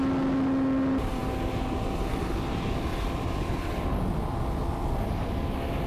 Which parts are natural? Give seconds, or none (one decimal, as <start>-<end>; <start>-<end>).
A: 0.0-5.9